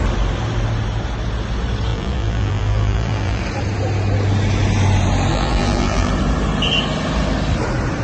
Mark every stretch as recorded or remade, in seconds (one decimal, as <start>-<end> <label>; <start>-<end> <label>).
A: 0.0-1.9 recorded; 1.9-3.4 remade; 3.4-5.3 recorded; 5.3-6.1 remade; 6.1-8.0 recorded